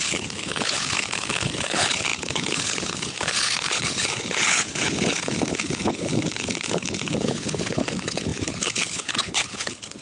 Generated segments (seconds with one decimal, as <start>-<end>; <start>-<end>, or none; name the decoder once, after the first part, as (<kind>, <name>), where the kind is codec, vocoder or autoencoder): 0.0-10.0 (codec, HILCodec)